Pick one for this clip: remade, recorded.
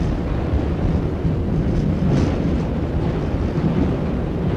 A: recorded